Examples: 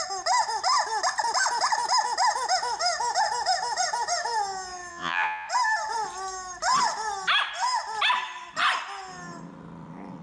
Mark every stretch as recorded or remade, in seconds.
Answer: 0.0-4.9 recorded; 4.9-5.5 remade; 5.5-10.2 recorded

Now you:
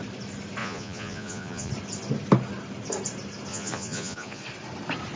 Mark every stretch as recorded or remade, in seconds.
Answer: 0.0-0.6 recorded; 0.6-1.7 remade; 1.7-3.5 recorded; 3.5-4.4 remade; 4.4-5.2 recorded

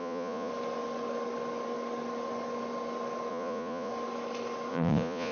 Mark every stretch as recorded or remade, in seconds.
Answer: 0.0-0.5 remade; 0.5-3.3 recorded; 3.3-3.9 remade; 3.9-4.7 recorded; 4.7-5.3 remade

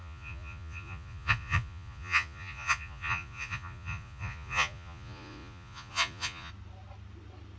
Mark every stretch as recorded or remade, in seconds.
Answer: 0.0-6.5 remade; 6.5-7.6 recorded

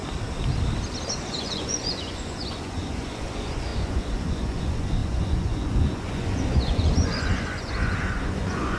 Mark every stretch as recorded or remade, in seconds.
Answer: 0.0-1.3 recorded; 1.3-8.8 remade

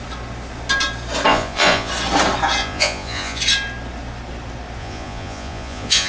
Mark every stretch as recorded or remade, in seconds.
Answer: 0.0-1.3 recorded; 1.3-1.9 remade; 1.9-2.6 recorded; 2.6-3.4 remade; 3.4-4.8 recorded; 4.8-6.1 remade

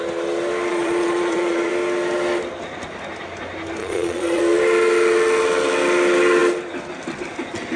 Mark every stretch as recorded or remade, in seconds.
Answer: 0.0-0.7 recorded; 0.7-1.7 remade; 1.7-3.8 recorded; 3.8-4.4 remade; 4.4-7.8 recorded